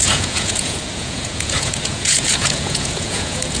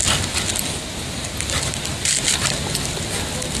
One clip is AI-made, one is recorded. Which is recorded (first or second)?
second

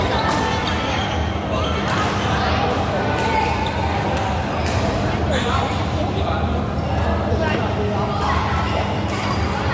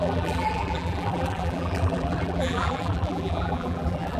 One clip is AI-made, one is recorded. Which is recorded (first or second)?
first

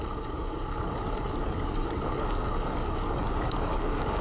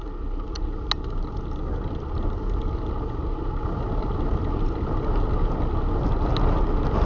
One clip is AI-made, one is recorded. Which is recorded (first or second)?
second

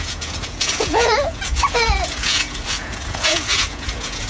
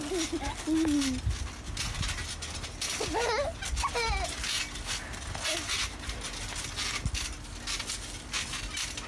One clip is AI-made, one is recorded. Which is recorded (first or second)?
second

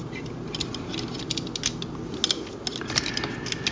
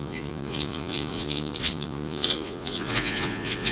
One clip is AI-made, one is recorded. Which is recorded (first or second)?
first